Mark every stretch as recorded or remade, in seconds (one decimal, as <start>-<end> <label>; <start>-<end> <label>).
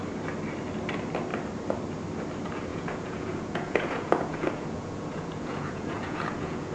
0.0-2.7 recorded; 2.7-6.7 remade